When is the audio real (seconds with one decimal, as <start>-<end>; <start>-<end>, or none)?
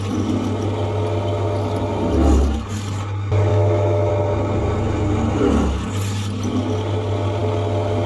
0.0-3.5; 4.1-8.1